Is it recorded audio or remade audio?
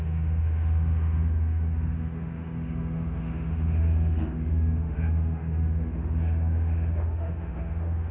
remade